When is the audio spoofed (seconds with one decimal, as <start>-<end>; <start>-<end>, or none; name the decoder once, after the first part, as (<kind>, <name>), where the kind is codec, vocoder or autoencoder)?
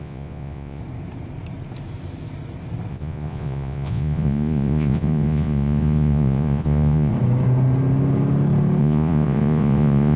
0.0-0.8 (vocoder, Vocos); 2.9-7.1; 8.8-10.2